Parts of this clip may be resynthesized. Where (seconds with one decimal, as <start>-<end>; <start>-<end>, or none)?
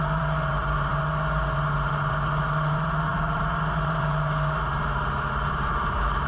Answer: 0.0-6.3